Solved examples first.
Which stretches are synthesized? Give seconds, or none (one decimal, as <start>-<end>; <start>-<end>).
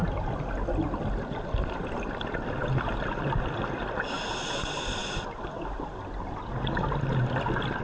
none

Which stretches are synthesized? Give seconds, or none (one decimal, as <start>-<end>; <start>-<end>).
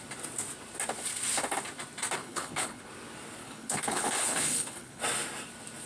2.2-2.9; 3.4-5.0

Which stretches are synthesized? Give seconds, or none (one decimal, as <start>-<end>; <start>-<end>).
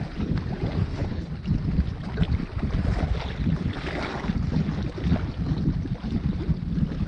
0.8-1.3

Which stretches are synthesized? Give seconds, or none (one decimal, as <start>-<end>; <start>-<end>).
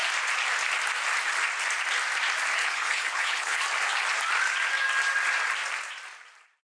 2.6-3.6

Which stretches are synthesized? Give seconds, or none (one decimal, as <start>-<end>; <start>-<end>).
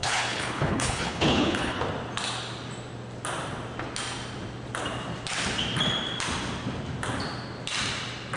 0.0-1.8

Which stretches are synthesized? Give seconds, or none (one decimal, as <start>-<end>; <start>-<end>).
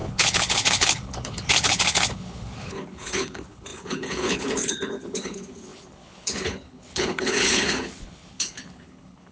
0.0-9.3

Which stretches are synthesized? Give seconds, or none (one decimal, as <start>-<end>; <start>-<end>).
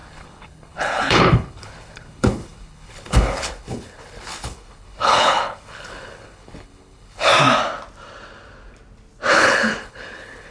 0.0-7.3; 9.3-10.5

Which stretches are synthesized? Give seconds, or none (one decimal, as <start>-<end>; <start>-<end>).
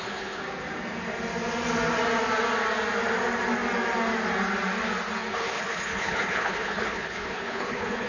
0.0-0.4; 5.3-8.1